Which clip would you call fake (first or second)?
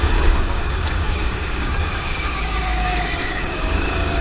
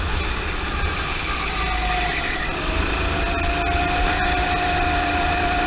first